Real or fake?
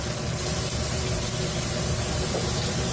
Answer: real